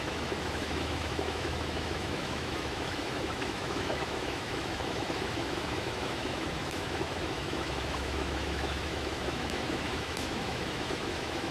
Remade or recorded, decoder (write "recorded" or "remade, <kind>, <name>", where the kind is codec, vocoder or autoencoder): remade, autoencoder, DAC-VAE